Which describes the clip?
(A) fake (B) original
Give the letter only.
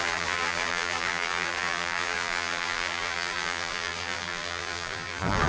A